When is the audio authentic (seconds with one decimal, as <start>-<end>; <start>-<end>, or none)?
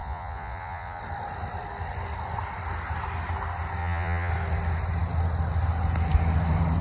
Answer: 1.0-3.8; 4.3-6.8